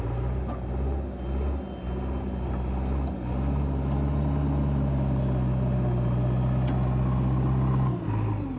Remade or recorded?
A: recorded